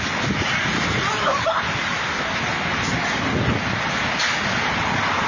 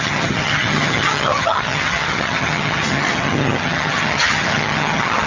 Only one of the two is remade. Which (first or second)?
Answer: second